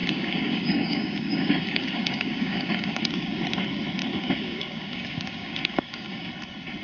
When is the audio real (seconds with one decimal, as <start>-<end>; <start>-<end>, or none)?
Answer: 3.4-4.0; 6.3-6.8